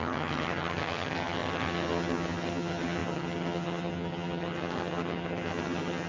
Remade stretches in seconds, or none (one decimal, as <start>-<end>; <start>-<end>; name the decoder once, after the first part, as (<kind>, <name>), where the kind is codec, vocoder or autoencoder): 0.0-6.1 (vocoder, HiFi-GAN)